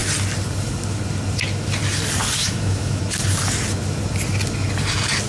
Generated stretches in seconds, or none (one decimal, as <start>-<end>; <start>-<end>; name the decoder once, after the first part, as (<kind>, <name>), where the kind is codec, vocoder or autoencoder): 2.4-3.0 (autoencoder, DAC-VAE)